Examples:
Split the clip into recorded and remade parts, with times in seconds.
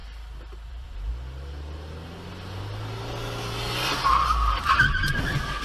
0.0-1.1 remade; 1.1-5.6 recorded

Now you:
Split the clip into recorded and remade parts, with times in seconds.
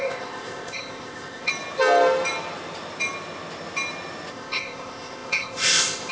0.0-1.5 remade; 1.5-4.3 recorded; 4.3-6.1 remade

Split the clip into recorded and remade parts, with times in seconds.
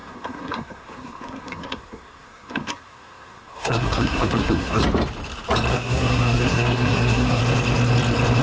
0.0-4.8 remade; 4.8-5.7 recorded; 5.7-7.4 remade; 7.4-8.4 recorded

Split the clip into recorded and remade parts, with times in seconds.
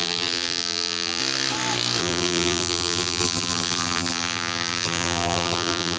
0.0-1.2 remade; 1.2-2.0 recorded; 2.0-6.0 remade